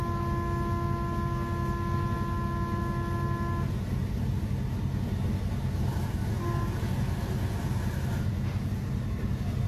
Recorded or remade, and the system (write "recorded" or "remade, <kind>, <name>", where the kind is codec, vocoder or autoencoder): recorded